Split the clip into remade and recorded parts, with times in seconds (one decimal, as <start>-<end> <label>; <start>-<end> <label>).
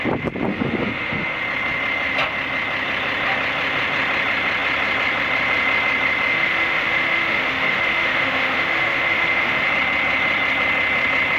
0.0-0.5 recorded; 0.5-1.4 remade; 1.4-6.3 recorded; 6.3-9.7 remade; 9.7-11.4 recorded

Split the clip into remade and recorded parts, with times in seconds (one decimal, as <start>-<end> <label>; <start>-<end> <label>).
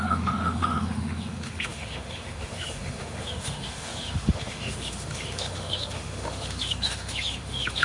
0.0-7.8 remade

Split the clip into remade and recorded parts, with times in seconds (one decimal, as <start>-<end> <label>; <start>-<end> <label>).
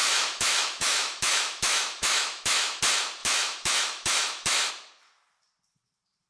0.0-2.8 remade; 2.8-3.2 recorded; 3.2-4.7 remade; 4.7-6.3 recorded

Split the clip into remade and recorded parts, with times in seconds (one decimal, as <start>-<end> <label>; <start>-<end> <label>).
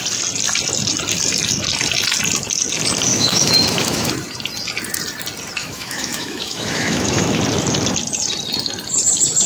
0.0-3.1 recorded; 3.1-4.1 remade; 4.1-5.6 recorded; 5.6-7.4 remade; 7.4-9.5 recorded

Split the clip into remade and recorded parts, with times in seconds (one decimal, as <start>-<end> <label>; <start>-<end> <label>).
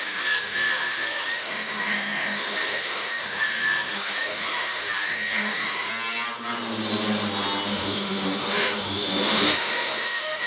0.0-5.9 remade; 5.9-7.7 recorded; 7.7-10.5 remade